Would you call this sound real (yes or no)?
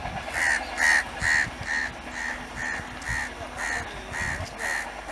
yes